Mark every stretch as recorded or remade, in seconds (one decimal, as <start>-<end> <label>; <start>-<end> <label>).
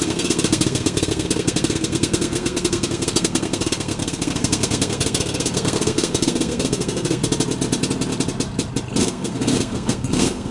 0.0-7.2 remade; 7.2-9.0 recorded; 9.0-10.5 remade